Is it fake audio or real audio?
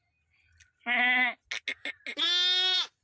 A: real